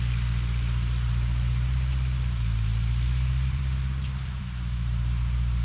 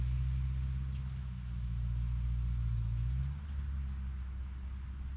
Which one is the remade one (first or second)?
first